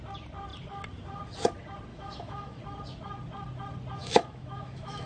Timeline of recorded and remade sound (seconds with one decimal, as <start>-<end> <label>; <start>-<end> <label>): 0.0-1.9 recorded; 1.9-2.6 remade; 2.6-4.0 recorded; 4.0-5.1 remade